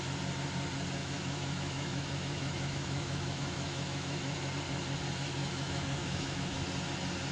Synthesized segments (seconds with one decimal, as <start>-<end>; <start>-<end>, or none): 1.0-4.5; 5.4-6.6